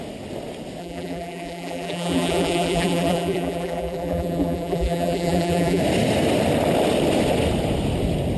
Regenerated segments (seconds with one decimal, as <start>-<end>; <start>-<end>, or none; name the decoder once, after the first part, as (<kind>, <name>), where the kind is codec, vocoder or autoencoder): 0.8-5.8 (vocoder, BigVGAN v2)